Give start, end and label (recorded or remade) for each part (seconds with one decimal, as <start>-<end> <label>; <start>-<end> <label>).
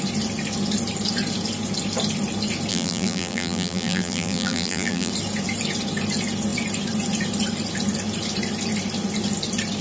0.0-2.7 recorded; 2.7-5.1 remade; 5.1-9.8 recorded